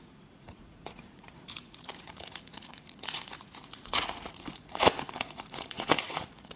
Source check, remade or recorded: remade